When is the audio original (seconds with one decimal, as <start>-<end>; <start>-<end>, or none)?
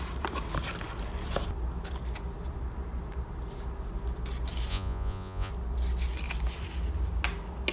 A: 0.0-4.7; 5.5-7.7